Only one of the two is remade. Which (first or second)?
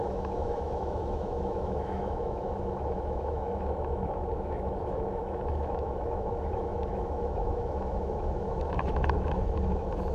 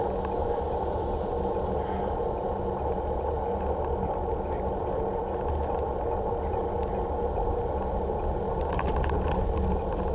first